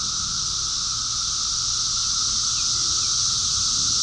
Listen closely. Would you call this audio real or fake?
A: real